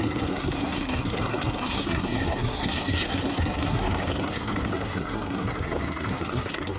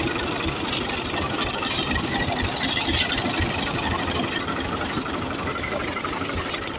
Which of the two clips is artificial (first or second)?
first